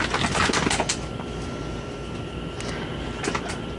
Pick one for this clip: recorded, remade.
recorded